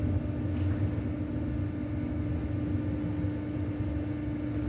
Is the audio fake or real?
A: real